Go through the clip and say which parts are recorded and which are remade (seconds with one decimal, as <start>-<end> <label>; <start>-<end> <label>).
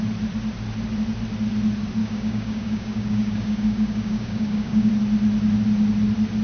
0.0-2.0 recorded; 2.0-4.9 remade; 4.9-6.4 recorded